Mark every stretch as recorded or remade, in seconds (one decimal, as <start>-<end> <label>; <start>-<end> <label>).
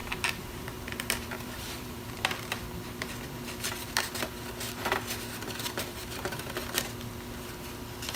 0.0-2.3 remade; 2.3-5.9 recorded; 5.9-6.4 remade; 6.4-8.2 recorded